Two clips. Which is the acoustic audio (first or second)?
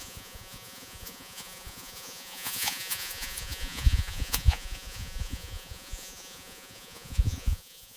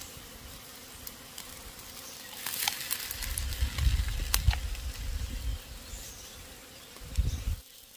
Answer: second